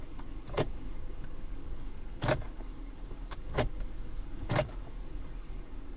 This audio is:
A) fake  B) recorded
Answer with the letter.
A